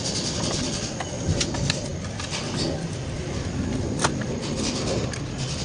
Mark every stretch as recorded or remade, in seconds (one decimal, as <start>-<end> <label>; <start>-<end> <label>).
0.0-5.6 recorded